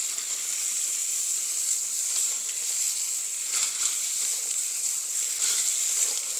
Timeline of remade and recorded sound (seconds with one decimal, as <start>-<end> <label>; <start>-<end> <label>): 0.0-3.6 recorded; 3.6-4.6 remade; 4.6-6.4 recorded

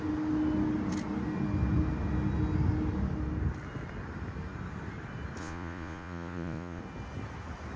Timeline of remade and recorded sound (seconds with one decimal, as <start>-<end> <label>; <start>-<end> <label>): 0.0-5.4 recorded; 5.4-6.8 remade; 6.8-7.8 recorded

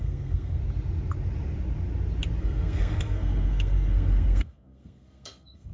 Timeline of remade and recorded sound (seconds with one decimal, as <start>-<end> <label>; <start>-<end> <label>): 0.0-0.6 remade; 0.6-2.4 recorded; 2.4-5.7 remade

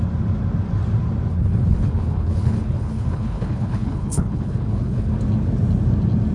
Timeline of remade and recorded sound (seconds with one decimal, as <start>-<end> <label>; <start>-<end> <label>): 0.0-1.3 recorded; 1.3-5.1 remade; 5.1-6.3 recorded

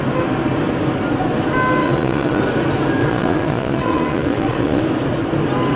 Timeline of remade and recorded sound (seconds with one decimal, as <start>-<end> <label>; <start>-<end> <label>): 0.0-1.8 recorded; 1.8-2.4 remade; 2.4-3.0 recorded; 3.0-4.8 remade; 4.8-5.8 recorded

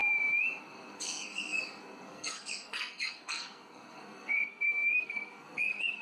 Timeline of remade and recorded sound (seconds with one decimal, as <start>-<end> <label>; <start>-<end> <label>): 0.0-0.6 recorded; 0.6-6.0 remade

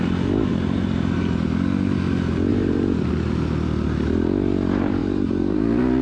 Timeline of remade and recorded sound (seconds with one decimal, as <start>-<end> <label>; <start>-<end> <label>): 0.0-0.5 recorded; 0.5-1.2 remade; 1.2-2.5 recorded; 2.5-3.1 remade; 3.1-5.0 recorded; 5.0-6.0 remade